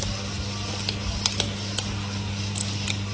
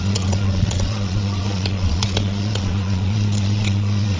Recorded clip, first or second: first